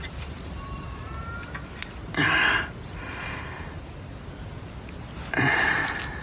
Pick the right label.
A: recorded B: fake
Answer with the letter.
A